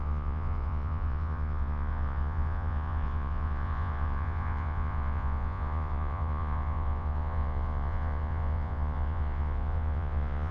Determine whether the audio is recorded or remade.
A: remade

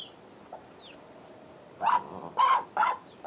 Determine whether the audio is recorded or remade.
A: recorded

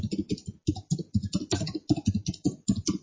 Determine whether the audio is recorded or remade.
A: recorded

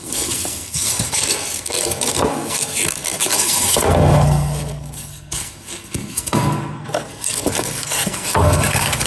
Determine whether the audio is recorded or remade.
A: remade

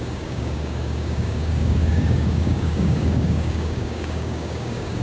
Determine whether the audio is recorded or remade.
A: remade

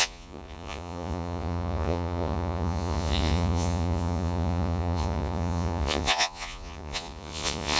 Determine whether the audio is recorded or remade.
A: remade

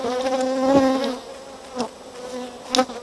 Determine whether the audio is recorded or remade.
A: recorded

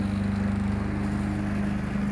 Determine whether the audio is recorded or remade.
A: recorded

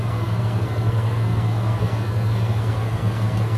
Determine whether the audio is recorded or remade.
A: remade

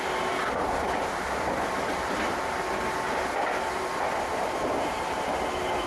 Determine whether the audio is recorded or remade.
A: recorded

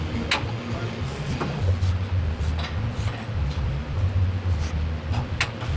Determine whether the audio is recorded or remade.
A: recorded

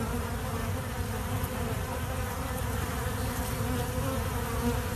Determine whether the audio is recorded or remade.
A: recorded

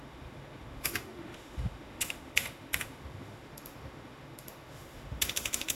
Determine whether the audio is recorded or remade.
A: remade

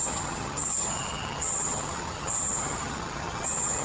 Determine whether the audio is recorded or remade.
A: remade